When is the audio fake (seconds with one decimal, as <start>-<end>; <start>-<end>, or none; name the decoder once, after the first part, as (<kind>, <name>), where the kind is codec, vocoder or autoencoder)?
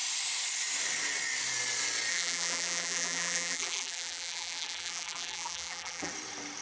2.1-6.1 (vocoder, BigVGAN v2)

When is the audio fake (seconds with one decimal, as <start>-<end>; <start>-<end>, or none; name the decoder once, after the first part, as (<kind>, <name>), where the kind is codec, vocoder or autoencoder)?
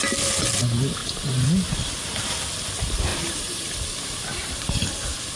3.1-3.7 (vocoder, BigVGAN v2); 4.3-4.9